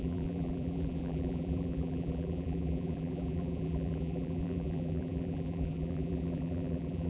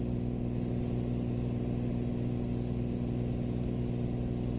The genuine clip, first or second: second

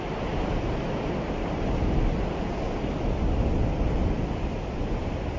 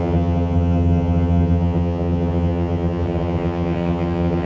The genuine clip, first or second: first